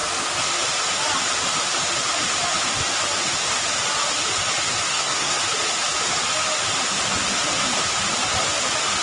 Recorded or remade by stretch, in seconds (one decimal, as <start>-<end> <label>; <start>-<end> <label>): 0.0-4.9 recorded; 4.9-5.4 remade; 5.4-9.0 recorded